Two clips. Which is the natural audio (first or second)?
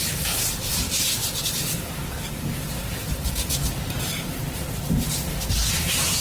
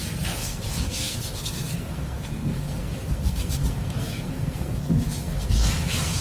first